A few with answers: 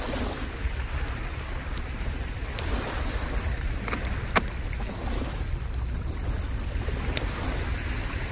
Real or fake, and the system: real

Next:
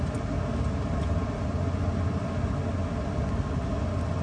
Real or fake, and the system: real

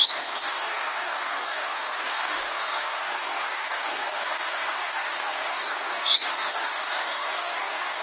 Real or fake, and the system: fake, codec, DAC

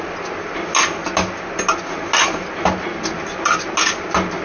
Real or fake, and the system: real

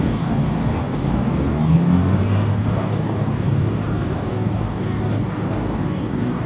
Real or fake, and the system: fake, codec, DAC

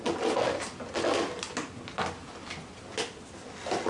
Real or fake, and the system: real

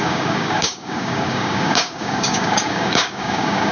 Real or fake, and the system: fake, codec, DAC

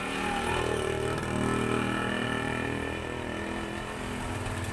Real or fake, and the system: real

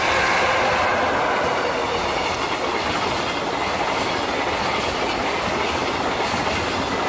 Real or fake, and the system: real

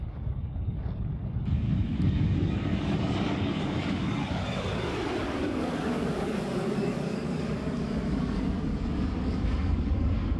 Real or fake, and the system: fake, codec, DAC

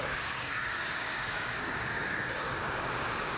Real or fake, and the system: fake, codec, DAC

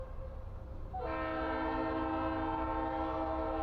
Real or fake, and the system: real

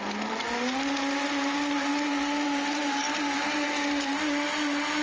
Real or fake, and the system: real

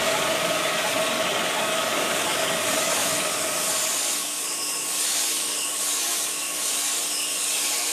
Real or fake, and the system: fake, codec, DAC